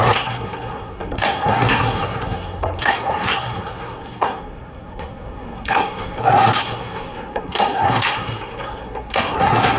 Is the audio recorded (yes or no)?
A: no